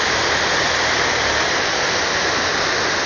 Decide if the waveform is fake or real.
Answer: real